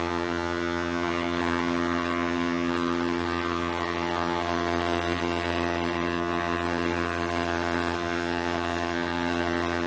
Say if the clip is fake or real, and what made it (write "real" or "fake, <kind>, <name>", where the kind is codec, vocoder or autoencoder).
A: fake, vocoder, HiFi-GAN